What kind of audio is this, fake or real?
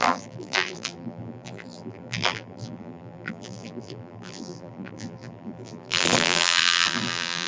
fake